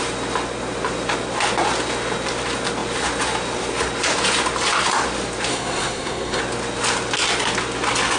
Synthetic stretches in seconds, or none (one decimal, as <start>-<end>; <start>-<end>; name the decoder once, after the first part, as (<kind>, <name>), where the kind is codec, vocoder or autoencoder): 5.5-6.4 (codec, SNAC)